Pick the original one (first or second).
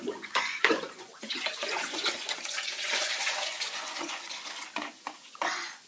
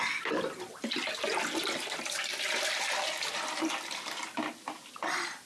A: second